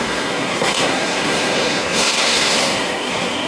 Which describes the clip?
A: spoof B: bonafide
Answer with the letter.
A